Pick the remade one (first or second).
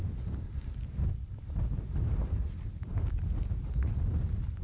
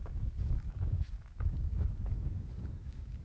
second